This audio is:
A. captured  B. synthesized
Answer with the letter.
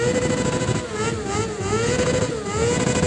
A